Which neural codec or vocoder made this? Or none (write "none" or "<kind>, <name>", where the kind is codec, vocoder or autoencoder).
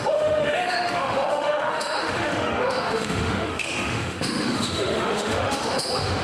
autoencoder, DAC-VAE